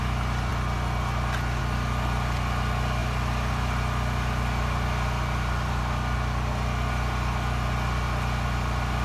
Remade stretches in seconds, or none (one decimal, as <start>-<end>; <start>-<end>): none